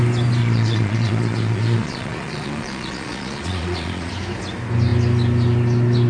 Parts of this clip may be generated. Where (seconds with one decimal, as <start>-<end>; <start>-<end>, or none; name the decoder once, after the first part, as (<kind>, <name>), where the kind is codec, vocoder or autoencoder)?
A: 0.4-4.1 (vocoder, Vocos)